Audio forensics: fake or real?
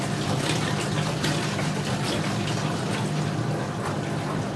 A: real